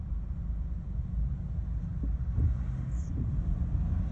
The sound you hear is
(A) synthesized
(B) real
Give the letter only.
B